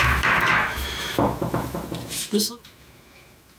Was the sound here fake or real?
fake